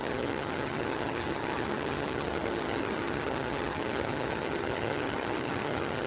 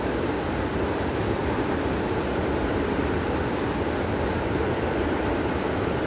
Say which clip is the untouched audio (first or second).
second